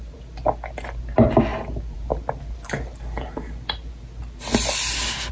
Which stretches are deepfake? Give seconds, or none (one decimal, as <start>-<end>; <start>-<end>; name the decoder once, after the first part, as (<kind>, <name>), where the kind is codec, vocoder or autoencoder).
none